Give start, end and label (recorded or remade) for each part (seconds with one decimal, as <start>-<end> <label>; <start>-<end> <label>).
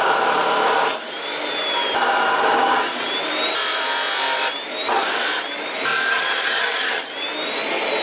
0.0-6.1 recorded; 6.1-7.1 remade; 7.1-8.0 recorded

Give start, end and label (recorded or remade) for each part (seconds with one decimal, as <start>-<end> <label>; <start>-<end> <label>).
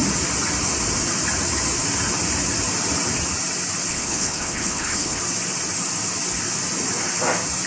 0.0-3.9 recorded; 3.9-5.2 remade; 5.2-7.7 recorded